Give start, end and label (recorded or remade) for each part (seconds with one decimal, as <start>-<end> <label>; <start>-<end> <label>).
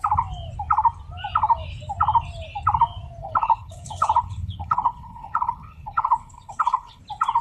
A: 0.0-3.2 recorded; 3.2-7.0 remade; 7.0-7.4 recorded